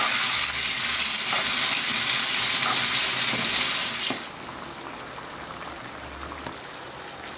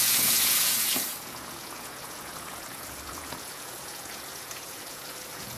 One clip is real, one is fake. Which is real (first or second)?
first